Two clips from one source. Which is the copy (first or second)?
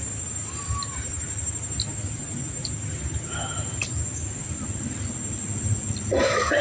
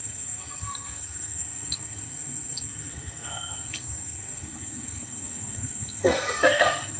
second